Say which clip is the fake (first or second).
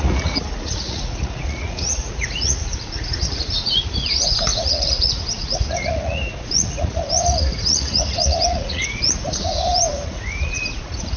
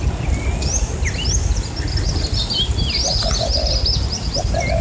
first